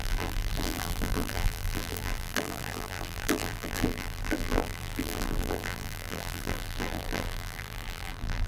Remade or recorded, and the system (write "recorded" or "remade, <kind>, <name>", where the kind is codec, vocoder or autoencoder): remade, vocoder, BigVGAN v2